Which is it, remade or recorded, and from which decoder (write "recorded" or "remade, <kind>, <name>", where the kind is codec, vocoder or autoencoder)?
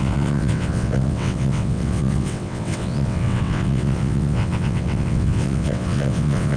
remade, vocoder, WaveNeXt